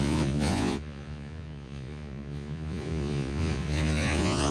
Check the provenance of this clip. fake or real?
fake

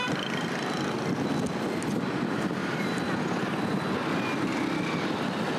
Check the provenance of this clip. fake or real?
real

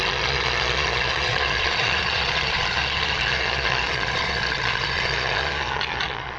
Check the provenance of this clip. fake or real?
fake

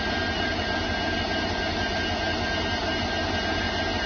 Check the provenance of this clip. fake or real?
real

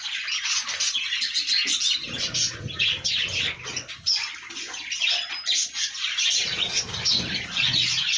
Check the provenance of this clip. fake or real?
real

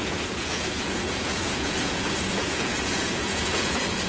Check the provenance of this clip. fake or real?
fake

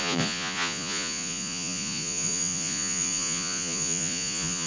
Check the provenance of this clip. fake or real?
fake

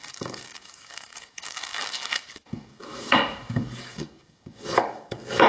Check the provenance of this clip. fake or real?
fake